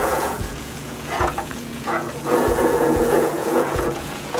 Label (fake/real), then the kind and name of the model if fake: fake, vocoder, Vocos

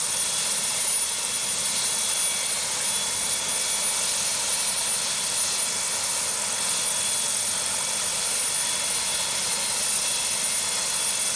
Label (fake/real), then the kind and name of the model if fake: real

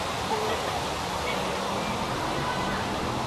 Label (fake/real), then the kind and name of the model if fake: real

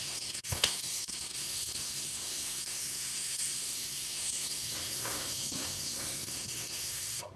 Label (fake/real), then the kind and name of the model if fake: fake, codec, SNAC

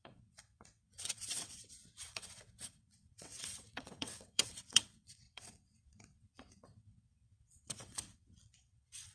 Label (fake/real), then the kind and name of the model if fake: fake, vocoder, WaveNeXt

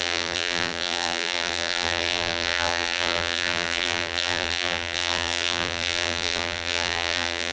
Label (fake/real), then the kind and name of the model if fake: fake, vocoder, BigVGAN v2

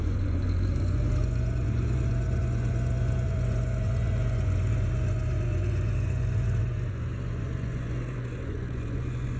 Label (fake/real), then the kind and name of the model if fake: fake, vocoder, Vocos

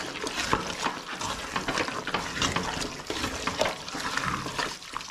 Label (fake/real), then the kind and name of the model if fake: real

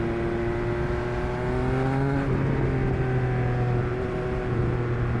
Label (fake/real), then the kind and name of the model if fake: real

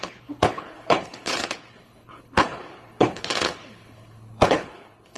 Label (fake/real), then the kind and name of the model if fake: fake, codec, HILCodec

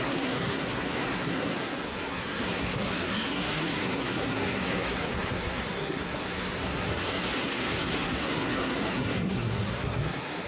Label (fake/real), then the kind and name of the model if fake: fake, codec, SNAC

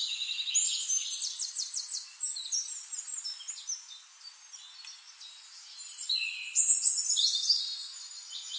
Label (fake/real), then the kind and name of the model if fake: real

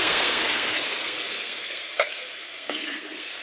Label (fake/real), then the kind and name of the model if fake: fake, codec, SNAC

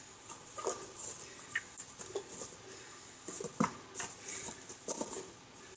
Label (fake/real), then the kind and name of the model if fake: real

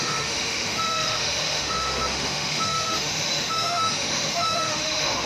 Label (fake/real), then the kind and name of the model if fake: fake, autoencoder, DAC-VAE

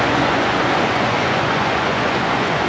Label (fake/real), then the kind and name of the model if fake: fake, vocoder, Vocos